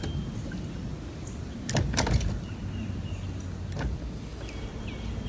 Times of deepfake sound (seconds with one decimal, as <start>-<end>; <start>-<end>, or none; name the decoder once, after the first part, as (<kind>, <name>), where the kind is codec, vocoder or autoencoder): none